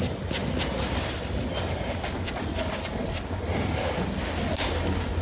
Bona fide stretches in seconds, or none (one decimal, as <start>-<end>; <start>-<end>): 0.0-5.2